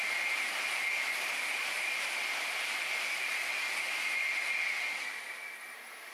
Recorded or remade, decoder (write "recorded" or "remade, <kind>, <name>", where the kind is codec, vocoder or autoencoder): remade, vocoder, BigVGAN v2